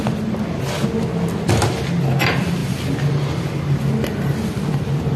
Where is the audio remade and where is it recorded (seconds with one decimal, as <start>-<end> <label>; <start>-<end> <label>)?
0.0-5.2 recorded

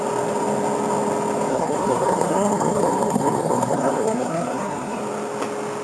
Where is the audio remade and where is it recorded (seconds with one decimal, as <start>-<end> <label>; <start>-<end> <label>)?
0.0-1.5 recorded; 1.5-5.0 remade; 5.0-5.8 recorded

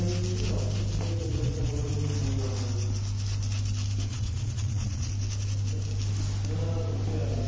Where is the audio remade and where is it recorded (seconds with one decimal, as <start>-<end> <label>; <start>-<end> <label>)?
0.0-1.2 recorded; 1.2-1.9 remade; 1.9-4.1 recorded; 4.1-5.1 remade; 5.1-7.5 recorded

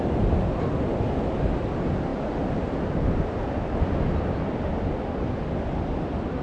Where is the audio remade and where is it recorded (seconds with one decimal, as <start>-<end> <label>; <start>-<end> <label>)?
0.0-6.4 recorded

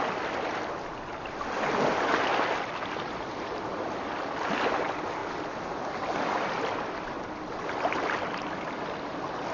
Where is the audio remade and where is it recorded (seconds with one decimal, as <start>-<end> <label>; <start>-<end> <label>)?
0.0-9.5 recorded

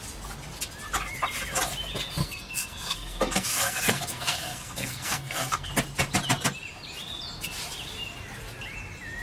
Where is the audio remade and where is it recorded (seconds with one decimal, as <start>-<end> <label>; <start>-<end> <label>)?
0.0-2.2 recorded; 2.2-5.7 remade; 5.7-9.2 recorded

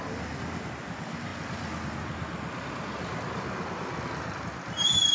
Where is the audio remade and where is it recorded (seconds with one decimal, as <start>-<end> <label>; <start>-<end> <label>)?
0.0-5.1 recorded